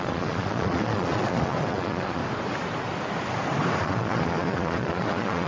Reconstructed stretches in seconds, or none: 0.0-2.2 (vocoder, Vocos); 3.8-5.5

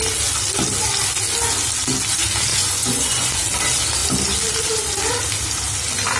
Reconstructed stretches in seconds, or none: 2.5-3.4 (vocoder, Vocos)

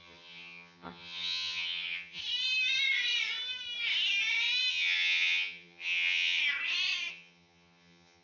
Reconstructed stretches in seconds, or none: 0.0-2.2 (vocoder, HiFi-GAN); 4.7-6.4; 7.1-8.2

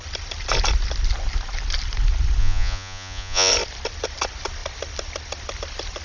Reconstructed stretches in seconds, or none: 2.4-3.5 (vocoder, Vocos)